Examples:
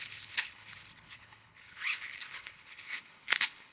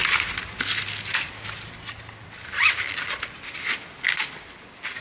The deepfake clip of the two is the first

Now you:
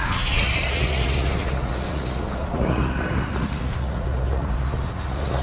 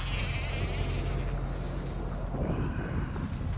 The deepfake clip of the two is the first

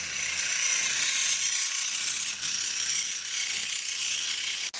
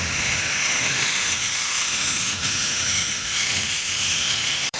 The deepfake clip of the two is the second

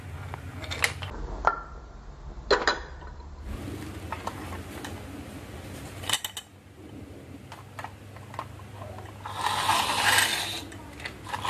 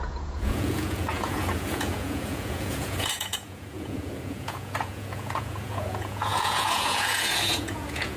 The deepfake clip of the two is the second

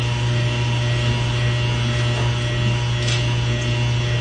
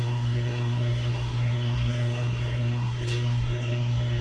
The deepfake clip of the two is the second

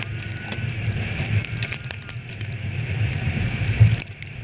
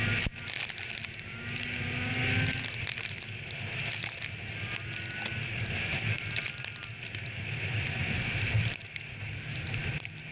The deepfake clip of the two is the first